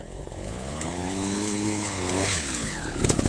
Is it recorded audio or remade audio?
remade